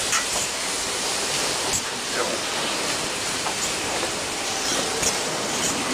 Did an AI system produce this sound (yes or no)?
yes